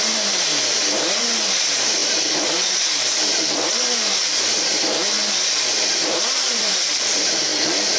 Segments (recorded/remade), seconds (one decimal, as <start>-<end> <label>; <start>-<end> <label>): 0.0-7.5 remade; 7.5-8.0 recorded